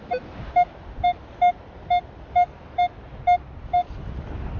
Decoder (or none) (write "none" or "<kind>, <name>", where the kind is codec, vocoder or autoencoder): none